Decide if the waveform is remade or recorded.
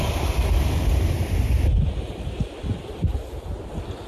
recorded